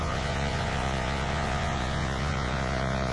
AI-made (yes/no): yes